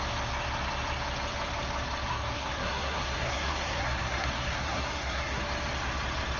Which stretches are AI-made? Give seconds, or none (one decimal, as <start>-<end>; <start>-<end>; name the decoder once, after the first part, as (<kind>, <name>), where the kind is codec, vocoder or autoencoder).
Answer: 2.1-5.4 (codec, SNAC)